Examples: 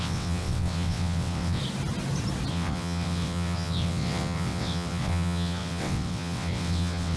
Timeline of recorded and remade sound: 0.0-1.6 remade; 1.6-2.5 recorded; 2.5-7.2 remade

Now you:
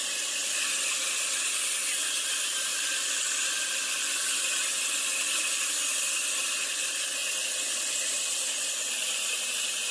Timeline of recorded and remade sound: 0.0-9.9 recorded

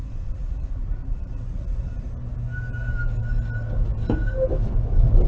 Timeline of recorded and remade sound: 0.0-1.9 remade; 1.9-5.3 recorded

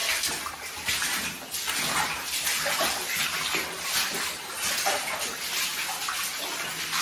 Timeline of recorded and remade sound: 0.0-7.0 recorded

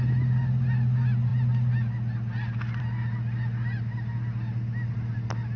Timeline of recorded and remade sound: 0.0-5.6 recorded

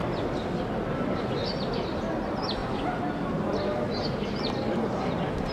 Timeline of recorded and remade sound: 0.0-5.5 recorded

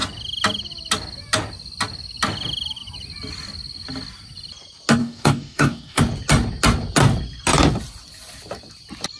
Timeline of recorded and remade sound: 0.0-5.0 recorded; 5.0-6.0 remade; 6.0-9.2 recorded